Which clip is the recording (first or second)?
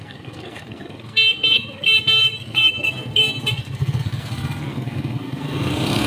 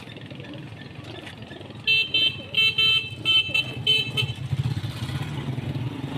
second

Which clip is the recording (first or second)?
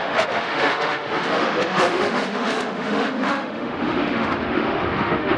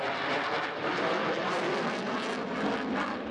second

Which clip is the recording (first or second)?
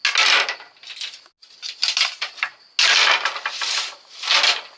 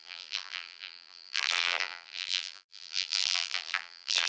first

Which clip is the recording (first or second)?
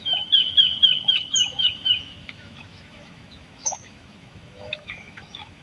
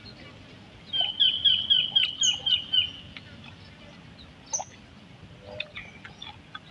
second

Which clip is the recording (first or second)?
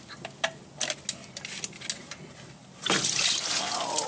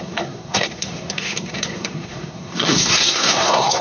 first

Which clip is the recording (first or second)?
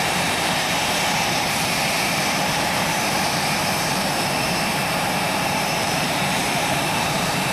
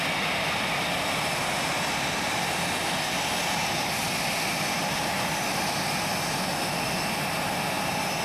second